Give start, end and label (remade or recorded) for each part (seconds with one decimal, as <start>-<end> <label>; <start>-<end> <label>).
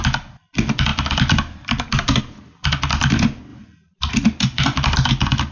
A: 0.0-0.5 remade; 0.5-0.9 recorded; 0.9-2.2 remade; 2.2-3.5 recorded; 3.5-4.1 remade; 4.1-5.5 recorded